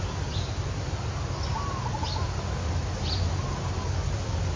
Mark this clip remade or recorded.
recorded